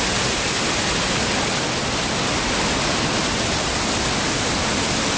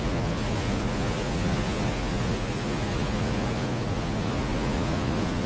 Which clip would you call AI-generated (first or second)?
second